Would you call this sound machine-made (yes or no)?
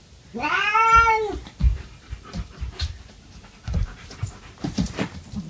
yes